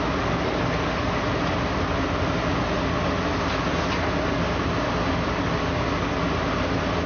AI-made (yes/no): no